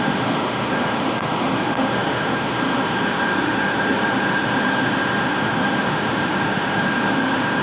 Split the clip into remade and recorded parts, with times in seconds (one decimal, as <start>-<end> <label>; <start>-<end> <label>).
0.0-7.6 remade

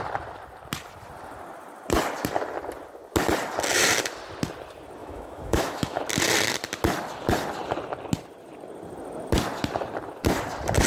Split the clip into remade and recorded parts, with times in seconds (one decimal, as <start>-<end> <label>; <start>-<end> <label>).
0.0-5.0 recorded; 5.0-6.0 remade; 6.0-10.9 recorded